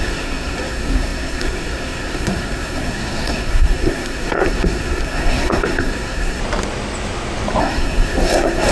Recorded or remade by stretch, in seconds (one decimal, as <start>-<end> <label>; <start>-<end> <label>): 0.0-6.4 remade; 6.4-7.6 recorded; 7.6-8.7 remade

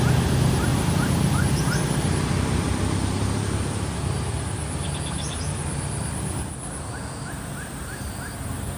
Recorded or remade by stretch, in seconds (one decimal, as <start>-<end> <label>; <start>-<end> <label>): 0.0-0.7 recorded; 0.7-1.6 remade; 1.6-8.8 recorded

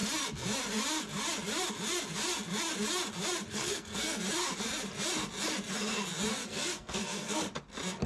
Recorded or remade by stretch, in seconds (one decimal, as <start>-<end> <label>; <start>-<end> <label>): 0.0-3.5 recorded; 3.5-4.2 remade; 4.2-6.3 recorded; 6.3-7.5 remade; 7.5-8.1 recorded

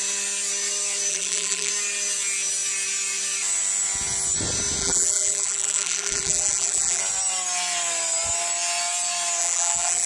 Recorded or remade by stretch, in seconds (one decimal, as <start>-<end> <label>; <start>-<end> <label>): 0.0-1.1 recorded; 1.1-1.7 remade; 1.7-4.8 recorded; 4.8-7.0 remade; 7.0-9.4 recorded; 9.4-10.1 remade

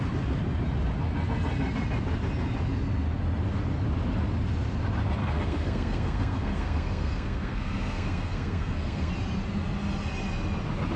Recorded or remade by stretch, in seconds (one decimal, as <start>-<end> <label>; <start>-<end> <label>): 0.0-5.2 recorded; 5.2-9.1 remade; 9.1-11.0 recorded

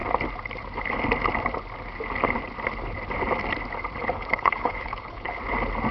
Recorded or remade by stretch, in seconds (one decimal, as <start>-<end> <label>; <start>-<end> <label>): 0.0-4.0 recorded; 4.0-5.4 remade; 5.4-5.9 recorded